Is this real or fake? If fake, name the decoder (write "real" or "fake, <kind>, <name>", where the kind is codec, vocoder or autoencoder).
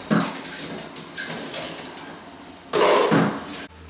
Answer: real